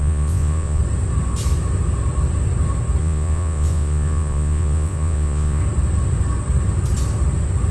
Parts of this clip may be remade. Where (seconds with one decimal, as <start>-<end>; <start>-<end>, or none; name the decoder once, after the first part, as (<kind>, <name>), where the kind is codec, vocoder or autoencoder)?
0.0-0.8 (vocoder, Vocos); 3.0-5.6